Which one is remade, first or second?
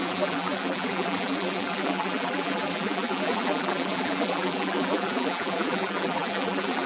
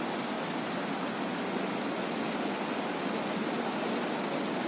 first